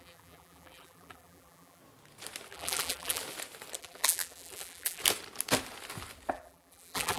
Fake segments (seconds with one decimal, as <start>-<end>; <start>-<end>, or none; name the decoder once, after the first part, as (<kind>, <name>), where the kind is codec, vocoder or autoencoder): 0.0-1.8 (vocoder, BigVGAN v2); 2.5-3.2; 3.8-5.0; 6.3-7.2